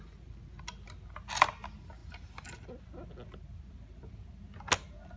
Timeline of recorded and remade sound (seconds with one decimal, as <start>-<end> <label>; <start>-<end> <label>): 0.0-5.2 recorded